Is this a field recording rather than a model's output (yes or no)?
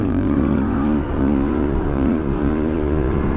no